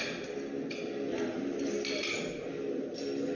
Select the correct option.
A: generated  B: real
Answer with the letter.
B